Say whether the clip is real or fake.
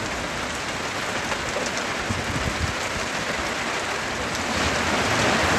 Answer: real